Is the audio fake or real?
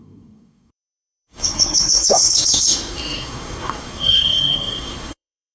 fake